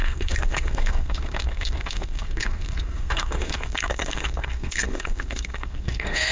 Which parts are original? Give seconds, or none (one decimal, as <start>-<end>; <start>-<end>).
none